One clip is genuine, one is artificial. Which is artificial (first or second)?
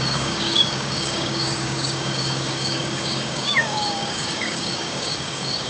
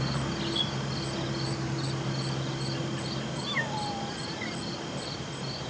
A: first